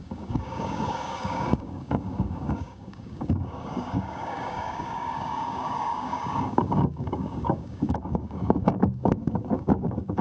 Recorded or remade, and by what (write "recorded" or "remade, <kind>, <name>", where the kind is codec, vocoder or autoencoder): remade, codec, DAC